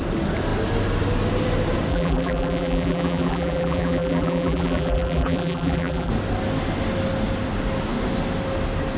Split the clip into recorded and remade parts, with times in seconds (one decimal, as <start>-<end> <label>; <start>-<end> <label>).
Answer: 0.0-1.9 recorded; 1.9-6.1 remade; 6.1-9.0 recorded